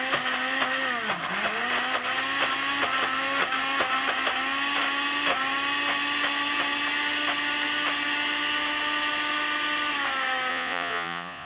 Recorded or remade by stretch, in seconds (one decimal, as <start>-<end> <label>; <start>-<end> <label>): 0.0-10.5 recorded; 10.5-11.5 remade